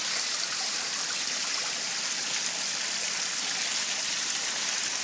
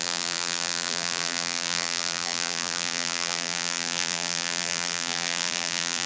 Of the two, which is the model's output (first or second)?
second